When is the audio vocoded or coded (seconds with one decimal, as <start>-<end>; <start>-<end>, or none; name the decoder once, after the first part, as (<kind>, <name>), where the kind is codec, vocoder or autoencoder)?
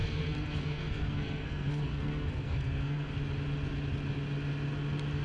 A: 0.0-3.1 (codec, SNAC)